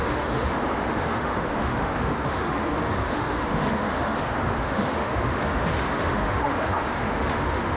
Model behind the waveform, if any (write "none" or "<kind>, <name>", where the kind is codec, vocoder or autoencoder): autoencoder, DAC-VAE